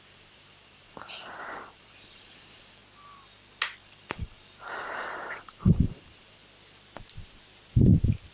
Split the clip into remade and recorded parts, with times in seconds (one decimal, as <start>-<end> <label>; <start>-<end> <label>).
0.0-2.8 remade; 2.8-3.8 recorded; 3.8-6.4 remade; 6.4-8.3 recorded